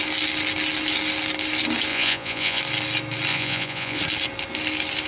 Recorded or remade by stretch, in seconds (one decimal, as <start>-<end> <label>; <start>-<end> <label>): 0.0-1.9 recorded; 1.9-2.6 remade; 2.6-3.3 recorded; 3.3-4.0 remade; 4.0-5.1 recorded